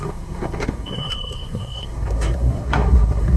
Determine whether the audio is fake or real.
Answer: fake